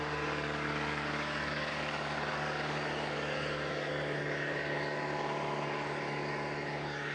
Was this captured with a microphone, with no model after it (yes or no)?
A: no